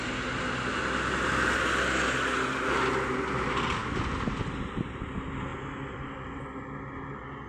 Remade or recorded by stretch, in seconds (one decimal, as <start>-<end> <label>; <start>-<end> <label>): 0.0-7.5 recorded